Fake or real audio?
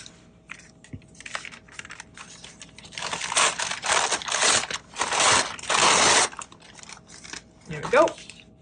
real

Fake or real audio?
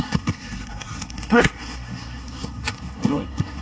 fake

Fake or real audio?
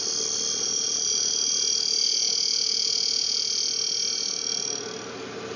real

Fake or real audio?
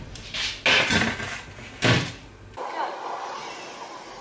real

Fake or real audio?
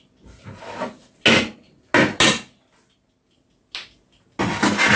real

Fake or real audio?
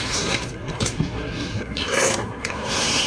fake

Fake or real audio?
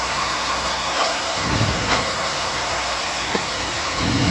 fake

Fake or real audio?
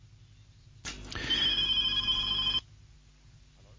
real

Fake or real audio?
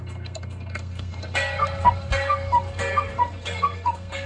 fake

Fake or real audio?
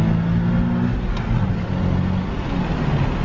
real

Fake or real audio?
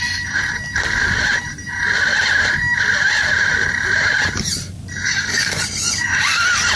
real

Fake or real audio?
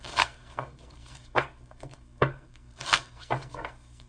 fake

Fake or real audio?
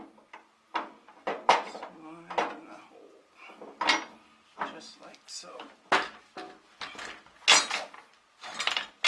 real